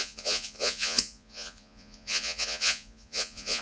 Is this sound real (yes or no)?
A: no